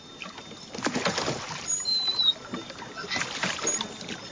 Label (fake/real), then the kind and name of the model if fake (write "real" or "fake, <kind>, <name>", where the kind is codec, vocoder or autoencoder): real